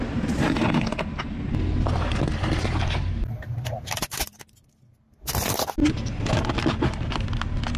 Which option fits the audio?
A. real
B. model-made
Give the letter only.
A